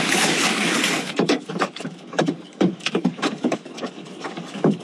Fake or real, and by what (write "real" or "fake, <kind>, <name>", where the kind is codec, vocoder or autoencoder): fake, codec, DAC